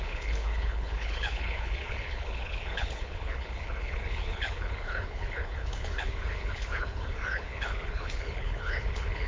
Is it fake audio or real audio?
fake